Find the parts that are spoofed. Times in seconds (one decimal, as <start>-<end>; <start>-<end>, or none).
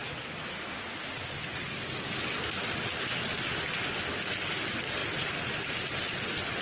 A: 0.0-0.6; 1.0-4.4; 5.0-5.7